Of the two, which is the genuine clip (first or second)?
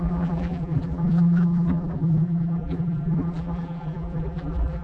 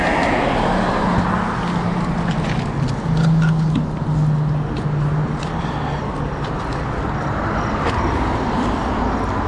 second